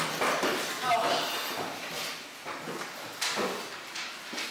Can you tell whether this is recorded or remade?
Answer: recorded